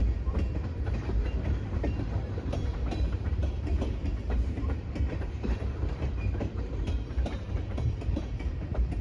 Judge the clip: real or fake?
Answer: fake